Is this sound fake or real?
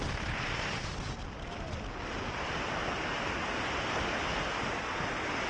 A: real